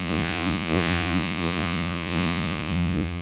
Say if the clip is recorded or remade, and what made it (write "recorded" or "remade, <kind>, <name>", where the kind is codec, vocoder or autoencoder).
remade, vocoder, Vocos